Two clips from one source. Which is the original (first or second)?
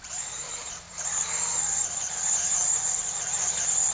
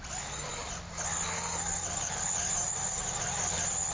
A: second